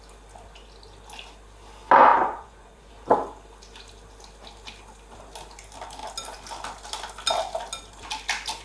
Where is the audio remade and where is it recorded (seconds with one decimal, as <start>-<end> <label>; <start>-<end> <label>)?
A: 0.0-2.1 recorded; 2.1-2.9 remade; 2.9-8.6 recorded